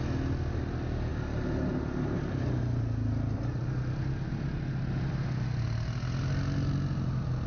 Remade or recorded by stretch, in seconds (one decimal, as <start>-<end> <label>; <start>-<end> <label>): 0.0-7.5 recorded